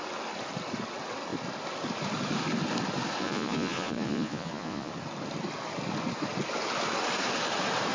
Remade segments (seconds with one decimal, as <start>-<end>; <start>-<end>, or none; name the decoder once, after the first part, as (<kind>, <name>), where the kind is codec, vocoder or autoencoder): 3.2-4.9 (vocoder, Vocos)